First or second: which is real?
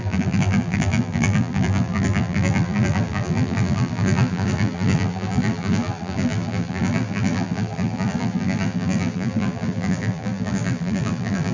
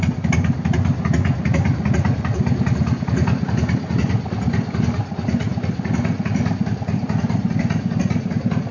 second